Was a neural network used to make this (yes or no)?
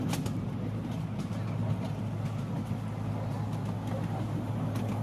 no